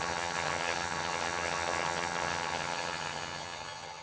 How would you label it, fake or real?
fake